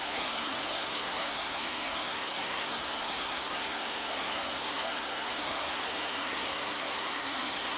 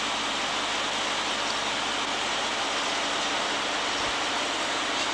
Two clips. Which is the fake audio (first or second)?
first